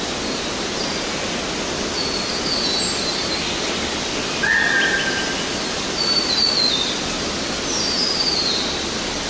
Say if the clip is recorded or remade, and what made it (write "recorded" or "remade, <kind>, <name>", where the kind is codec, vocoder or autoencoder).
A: recorded